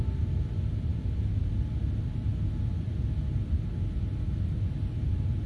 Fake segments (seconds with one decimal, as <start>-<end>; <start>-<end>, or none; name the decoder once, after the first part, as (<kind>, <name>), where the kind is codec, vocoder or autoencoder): none